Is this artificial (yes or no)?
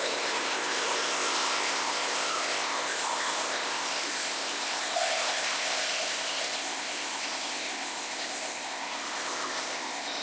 yes